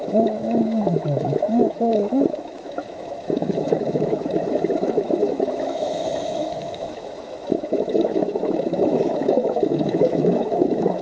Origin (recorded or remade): remade